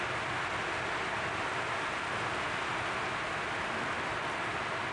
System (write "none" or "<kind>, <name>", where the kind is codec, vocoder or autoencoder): none